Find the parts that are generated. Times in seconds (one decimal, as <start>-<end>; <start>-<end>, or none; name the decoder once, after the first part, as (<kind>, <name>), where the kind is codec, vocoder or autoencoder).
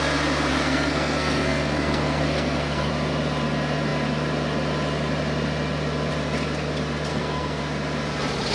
0.5-2.9 (codec, SNAC); 7.1-7.6